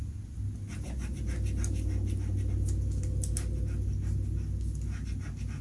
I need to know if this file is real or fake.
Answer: real